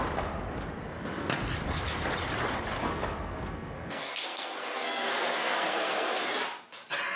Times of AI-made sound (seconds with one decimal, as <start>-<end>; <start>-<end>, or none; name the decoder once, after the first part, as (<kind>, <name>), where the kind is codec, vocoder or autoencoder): 2.8-6.2 (codec, SNAC)